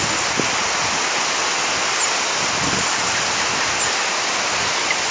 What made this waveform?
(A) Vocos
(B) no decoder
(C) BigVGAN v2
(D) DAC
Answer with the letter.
B